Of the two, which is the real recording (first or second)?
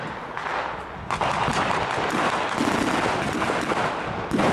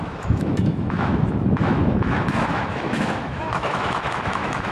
first